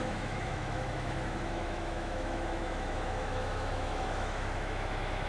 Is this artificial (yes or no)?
yes